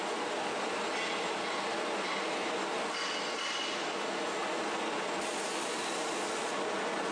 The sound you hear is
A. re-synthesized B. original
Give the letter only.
B